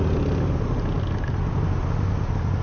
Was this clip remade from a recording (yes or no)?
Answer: no